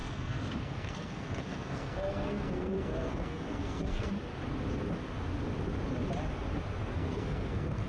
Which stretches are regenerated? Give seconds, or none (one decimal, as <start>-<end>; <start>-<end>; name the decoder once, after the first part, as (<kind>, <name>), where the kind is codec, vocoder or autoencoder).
0.0-4.1 (codec, SNAC); 6.8-7.9